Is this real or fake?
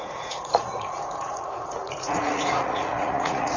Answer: fake